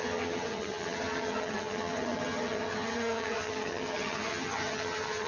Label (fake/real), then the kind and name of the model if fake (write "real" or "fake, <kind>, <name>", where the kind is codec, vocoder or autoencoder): fake, vocoder, HiFi-GAN